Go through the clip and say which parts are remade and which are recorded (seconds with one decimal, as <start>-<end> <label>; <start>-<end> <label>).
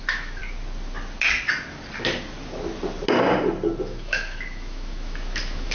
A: 0.0-0.4 remade; 0.4-3.8 recorded; 3.8-5.7 remade